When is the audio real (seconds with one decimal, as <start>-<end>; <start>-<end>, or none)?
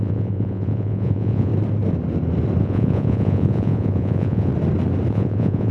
1.5-2.6; 4.5-5.1